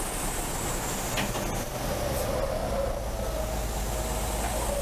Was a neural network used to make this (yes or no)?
no